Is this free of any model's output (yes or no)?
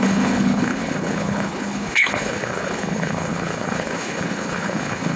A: no